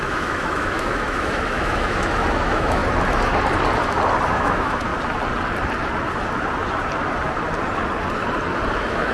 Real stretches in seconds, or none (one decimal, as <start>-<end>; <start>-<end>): 2.8-4.3; 4.9-8.7